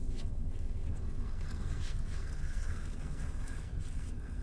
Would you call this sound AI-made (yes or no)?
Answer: yes